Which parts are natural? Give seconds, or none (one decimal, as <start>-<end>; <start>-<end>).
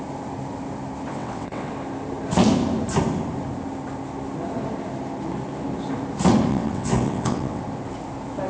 0.0-1.1; 1.7-6.5; 7.6-8.5